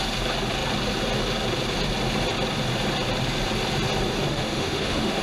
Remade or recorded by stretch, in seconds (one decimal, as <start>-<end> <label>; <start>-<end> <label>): 0.0-4.3 recorded; 4.3-5.2 remade